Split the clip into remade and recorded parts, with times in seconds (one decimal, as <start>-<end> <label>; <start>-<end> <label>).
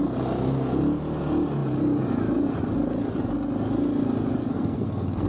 0.0-4.4 recorded; 4.4-5.3 remade